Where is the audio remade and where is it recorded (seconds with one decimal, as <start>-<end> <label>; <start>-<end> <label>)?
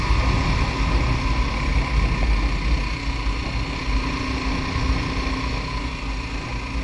0.0-6.8 recorded